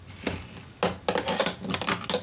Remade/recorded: recorded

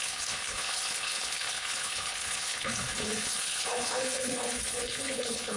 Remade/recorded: remade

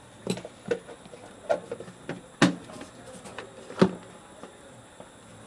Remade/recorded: recorded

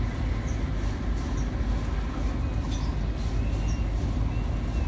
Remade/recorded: recorded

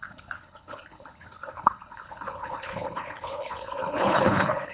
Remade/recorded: remade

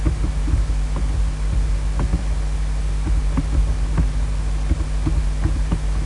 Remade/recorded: recorded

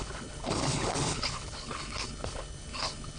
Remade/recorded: remade